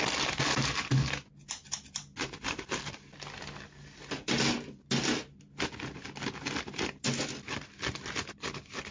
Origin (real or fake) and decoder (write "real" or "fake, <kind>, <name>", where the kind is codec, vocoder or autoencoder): real